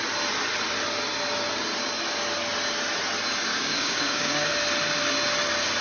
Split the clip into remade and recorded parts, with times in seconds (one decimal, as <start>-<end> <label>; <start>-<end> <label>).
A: 0.0-3.5 recorded; 3.5-4.5 remade; 4.5-5.8 recorded